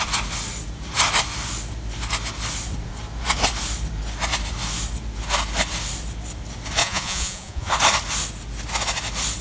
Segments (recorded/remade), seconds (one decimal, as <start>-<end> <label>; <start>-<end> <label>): 0.0-6.8 recorded; 6.8-7.7 remade; 7.7-9.4 recorded

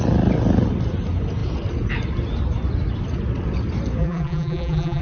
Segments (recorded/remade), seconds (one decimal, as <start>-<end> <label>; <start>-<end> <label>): 0.0-4.0 recorded; 4.0-5.0 remade

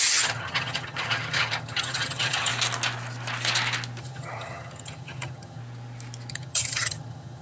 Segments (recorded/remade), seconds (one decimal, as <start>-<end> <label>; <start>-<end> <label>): 0.0-2.5 remade; 2.5-4.0 recorded; 4.0-5.6 remade; 5.6-6.3 recorded; 6.3-7.4 remade

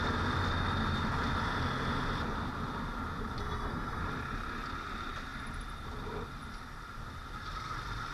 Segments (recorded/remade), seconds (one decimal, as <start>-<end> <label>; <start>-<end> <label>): 0.0-3.4 recorded; 3.4-4.0 remade; 4.0-8.1 recorded

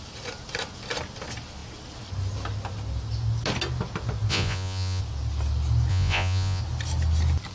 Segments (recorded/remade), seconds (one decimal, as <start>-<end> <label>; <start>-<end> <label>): 0.0-4.3 recorded; 4.3-5.0 remade; 5.0-5.9 recorded; 5.9-6.6 remade; 6.6-7.5 recorded

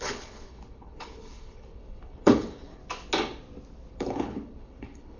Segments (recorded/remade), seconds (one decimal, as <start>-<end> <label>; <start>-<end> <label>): 0.0-2.8 remade; 2.8-3.9 recorded; 3.9-5.2 remade

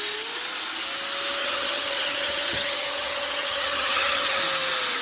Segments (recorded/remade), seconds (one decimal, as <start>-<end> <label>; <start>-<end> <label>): 0.0-1.4 recorded; 1.4-4.4 remade; 4.4-5.0 recorded